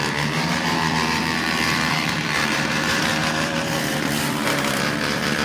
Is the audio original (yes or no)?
no